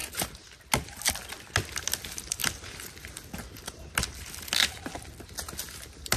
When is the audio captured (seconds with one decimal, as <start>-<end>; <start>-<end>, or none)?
0.0-6.2